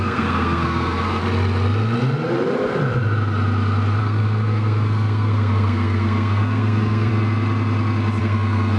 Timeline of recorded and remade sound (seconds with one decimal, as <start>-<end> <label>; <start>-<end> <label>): 0.0-1.2 remade; 1.2-4.0 recorded; 4.0-7.1 remade; 7.1-8.2 recorded; 8.2-8.8 remade

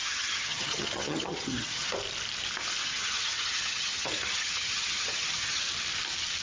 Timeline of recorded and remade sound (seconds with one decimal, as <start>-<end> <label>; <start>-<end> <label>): 0.0-1.9 remade; 1.9-2.8 recorded; 2.8-5.7 remade; 5.7-6.4 recorded

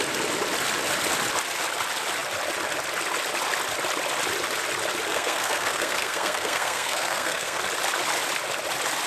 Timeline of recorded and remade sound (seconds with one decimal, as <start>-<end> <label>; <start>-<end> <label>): 0.0-5.1 recorded; 5.1-7.6 remade; 7.6-9.1 recorded

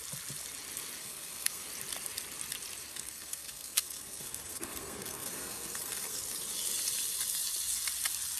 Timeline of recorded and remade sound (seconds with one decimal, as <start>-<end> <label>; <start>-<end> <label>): 0.0-1.0 recorded; 1.0-1.7 remade; 1.7-2.9 recorded; 2.9-6.2 remade; 6.2-8.4 recorded

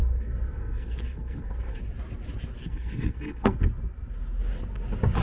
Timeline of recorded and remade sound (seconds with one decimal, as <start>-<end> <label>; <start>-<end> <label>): 0.0-1.8 remade; 1.8-2.6 recorded; 2.6-3.7 remade; 3.7-5.2 recorded